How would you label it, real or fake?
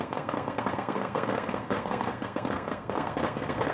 fake